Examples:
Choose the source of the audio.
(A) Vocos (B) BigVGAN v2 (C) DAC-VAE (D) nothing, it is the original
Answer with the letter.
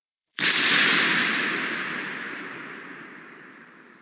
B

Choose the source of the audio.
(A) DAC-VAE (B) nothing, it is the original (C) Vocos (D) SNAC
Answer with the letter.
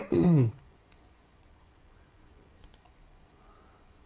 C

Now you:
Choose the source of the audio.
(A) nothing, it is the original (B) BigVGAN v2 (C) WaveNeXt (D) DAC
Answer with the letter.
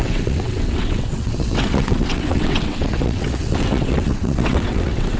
C